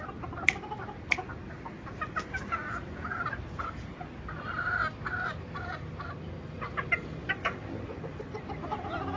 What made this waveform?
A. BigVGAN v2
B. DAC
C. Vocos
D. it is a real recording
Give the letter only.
D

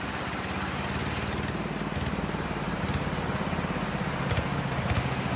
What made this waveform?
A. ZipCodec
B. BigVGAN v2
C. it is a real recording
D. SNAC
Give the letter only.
C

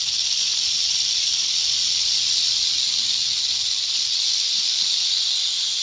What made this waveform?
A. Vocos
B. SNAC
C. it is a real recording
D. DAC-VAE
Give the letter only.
C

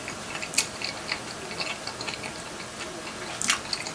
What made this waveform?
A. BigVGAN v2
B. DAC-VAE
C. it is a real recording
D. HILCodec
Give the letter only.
C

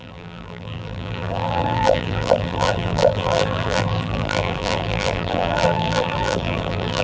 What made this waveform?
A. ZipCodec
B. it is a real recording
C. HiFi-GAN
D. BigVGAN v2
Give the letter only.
D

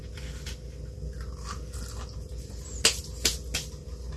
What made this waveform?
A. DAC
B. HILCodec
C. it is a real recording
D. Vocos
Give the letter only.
C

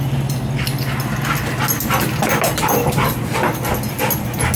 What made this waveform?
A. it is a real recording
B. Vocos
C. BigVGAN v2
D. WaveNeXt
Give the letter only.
A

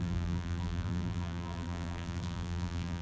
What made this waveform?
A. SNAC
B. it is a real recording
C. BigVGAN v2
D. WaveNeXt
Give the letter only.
C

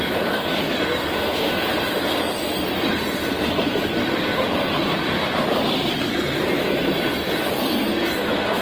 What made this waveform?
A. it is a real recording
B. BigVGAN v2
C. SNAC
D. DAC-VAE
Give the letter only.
A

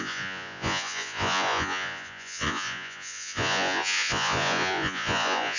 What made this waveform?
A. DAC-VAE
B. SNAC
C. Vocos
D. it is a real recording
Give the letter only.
C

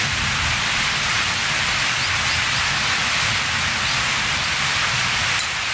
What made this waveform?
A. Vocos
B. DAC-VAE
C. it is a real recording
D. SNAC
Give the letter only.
C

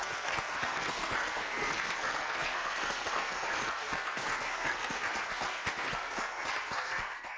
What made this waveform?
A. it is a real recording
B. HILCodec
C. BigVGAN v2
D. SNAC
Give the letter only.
D